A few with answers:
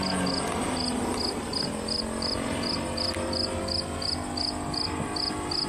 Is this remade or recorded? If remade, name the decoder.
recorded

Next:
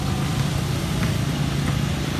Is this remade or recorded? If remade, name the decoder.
recorded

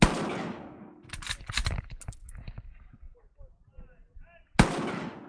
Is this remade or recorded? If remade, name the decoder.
recorded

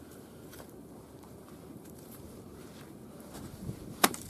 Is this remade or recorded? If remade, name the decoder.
remade, vocoder, BigVGAN v2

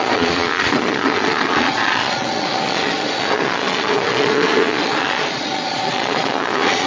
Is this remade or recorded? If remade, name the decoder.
remade, vocoder, Vocos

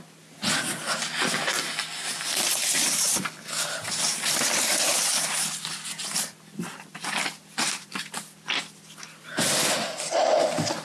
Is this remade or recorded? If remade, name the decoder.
recorded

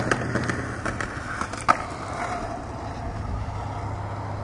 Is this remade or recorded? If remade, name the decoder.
recorded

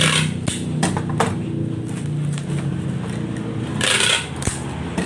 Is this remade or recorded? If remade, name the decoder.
recorded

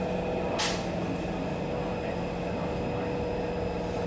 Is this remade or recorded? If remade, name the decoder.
recorded